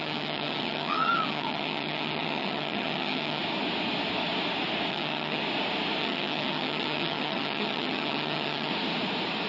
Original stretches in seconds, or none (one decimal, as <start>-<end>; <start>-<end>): 3.4-4.9; 5.4-6.0; 8.7-9.5